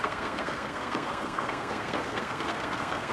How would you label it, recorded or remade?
remade